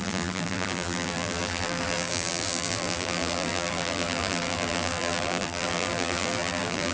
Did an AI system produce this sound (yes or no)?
yes